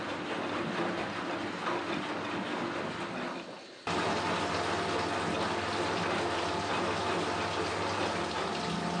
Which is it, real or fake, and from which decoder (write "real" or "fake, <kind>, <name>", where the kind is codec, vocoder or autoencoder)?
real